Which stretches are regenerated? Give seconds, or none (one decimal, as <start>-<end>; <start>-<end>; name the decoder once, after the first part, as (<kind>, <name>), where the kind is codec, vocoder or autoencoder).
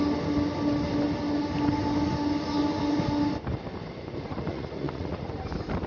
4.3-5.3 (vocoder, Vocos)